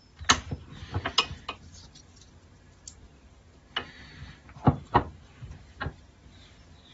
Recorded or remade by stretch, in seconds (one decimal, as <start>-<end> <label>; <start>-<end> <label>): 0.0-6.9 recorded